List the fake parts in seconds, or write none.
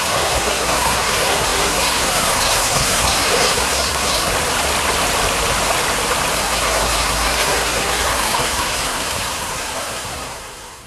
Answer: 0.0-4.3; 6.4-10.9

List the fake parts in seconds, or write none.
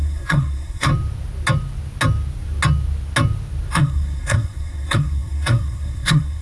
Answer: 0.0-0.9; 3.7-6.4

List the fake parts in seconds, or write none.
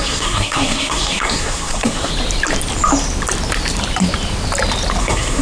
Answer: 0.0-2.1; 5.0-5.4